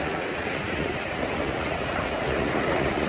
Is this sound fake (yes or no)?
yes